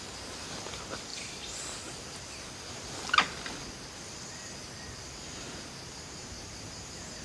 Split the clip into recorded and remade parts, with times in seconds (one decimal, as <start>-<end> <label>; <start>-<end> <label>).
0.0-7.2 recorded

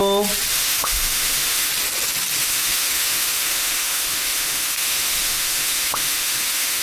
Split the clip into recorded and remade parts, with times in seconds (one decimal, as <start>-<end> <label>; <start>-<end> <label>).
0.0-0.5 recorded; 0.5-1.7 remade; 1.7-2.4 recorded; 2.4-6.8 remade